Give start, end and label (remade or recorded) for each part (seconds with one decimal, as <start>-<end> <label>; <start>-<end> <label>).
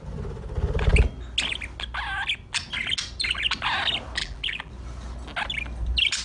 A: 0.0-4.2 recorded; 4.2-4.7 remade; 4.7-6.2 recorded